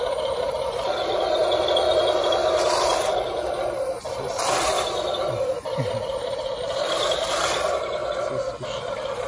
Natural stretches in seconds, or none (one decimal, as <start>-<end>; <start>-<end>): 8.0-8.9